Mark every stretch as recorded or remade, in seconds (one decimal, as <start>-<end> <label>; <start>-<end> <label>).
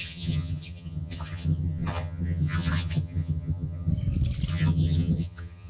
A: 0.0-3.9 remade; 3.9-4.5 recorded; 4.5-5.7 remade